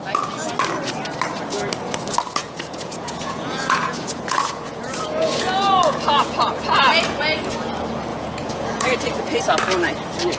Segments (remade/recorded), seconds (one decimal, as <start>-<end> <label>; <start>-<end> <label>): 0.0-2.4 recorded; 2.4-7.5 remade; 7.5-8.1 recorded; 8.1-9.4 remade; 9.4-10.4 recorded